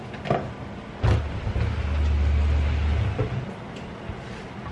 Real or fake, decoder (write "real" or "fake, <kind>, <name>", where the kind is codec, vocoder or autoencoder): real